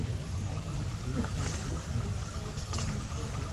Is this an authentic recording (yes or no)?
no